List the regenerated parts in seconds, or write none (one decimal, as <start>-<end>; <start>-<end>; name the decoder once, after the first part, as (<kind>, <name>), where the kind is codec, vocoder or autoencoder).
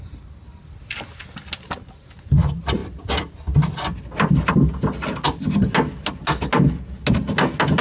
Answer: none